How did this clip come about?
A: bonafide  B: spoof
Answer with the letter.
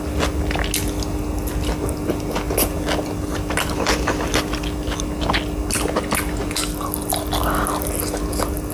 A